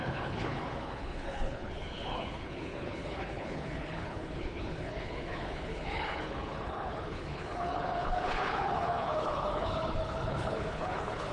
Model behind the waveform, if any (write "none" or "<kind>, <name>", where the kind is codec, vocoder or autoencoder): codec, HILCodec